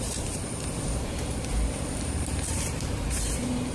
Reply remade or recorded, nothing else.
remade